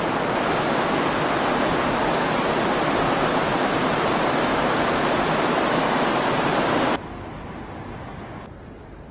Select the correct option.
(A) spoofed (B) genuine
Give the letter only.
B